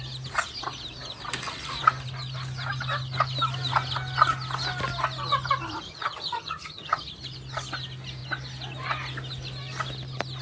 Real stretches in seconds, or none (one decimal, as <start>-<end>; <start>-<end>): 0.0-5.9; 7.0-10.4